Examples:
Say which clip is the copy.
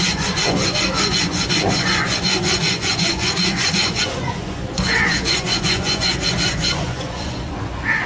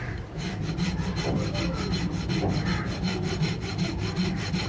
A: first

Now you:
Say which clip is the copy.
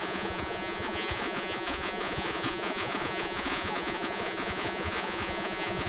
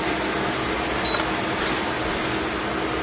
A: first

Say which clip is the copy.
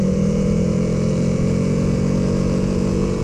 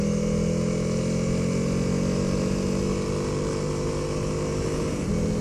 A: first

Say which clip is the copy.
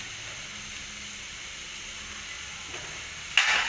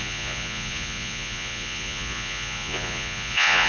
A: second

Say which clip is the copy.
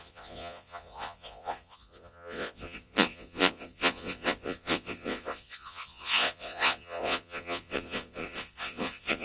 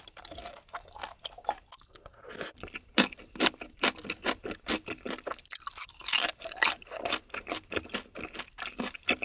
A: first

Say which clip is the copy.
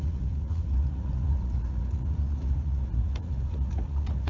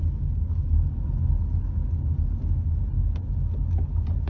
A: first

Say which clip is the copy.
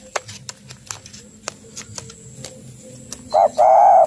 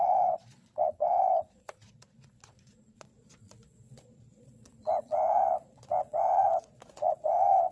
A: second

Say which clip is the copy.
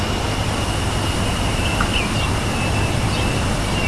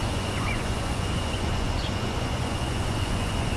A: second